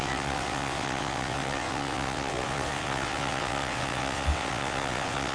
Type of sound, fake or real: fake